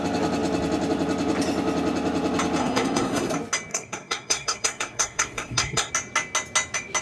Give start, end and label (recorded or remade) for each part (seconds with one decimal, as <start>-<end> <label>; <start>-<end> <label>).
0.0-2.6 recorded; 2.6-3.3 remade; 3.3-3.7 recorded; 3.7-5.9 remade; 5.9-7.0 recorded